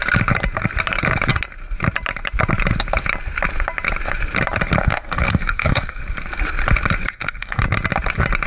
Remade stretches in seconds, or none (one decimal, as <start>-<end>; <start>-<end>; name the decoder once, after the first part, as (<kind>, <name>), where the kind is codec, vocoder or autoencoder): 4.8-6.0 (codec, SNAC); 7.0-7.6